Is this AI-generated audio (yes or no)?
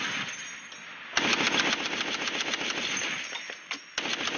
no